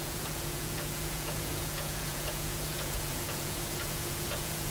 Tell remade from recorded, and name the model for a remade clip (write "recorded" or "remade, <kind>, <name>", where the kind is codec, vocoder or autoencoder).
remade, vocoder, Vocos